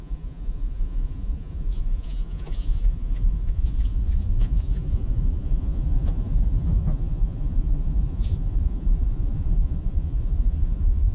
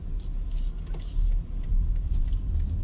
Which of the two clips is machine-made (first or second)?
first